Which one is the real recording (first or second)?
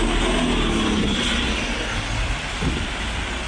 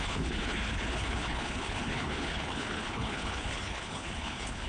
first